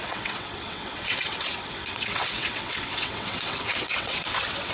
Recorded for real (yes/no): no